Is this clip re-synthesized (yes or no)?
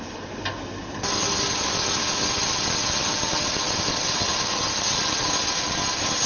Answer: no